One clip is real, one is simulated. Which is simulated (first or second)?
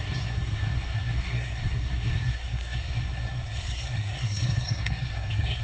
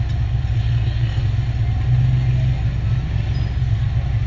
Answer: first